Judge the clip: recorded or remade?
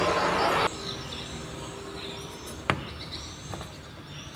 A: recorded